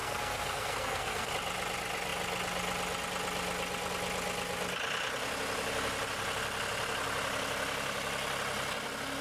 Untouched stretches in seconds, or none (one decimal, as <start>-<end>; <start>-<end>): 1.3-9.2